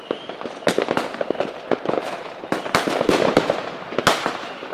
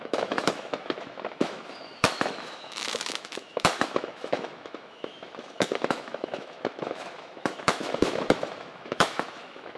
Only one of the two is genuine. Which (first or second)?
first